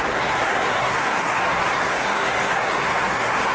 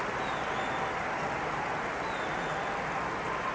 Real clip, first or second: second